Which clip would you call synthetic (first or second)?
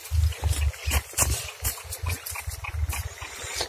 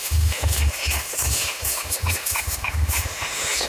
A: second